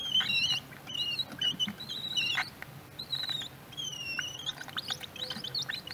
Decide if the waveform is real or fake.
real